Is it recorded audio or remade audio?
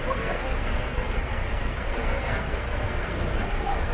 remade